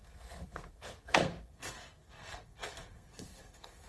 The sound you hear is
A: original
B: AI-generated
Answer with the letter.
B